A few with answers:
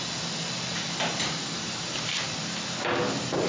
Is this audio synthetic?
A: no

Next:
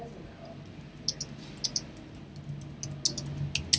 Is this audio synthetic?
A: no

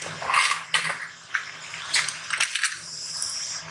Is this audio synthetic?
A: no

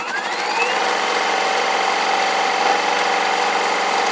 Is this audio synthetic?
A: no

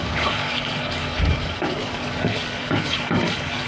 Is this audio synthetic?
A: yes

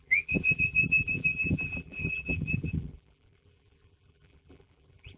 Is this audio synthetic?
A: yes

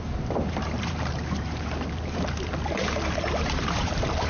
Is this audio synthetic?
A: yes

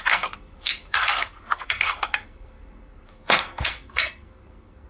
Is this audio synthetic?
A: yes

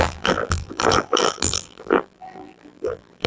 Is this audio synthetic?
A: yes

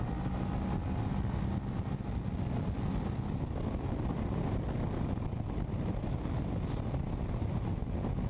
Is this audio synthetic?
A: no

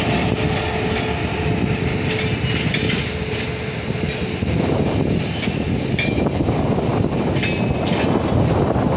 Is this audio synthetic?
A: no